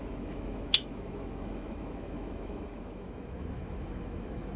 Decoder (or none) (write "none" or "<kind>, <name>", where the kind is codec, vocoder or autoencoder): autoencoder, DAC-VAE